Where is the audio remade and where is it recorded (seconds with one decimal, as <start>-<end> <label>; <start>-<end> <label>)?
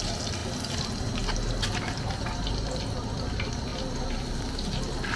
0.0-5.2 recorded